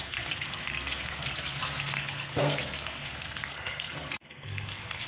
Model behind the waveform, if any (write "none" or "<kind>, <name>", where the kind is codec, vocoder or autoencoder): codec, SNAC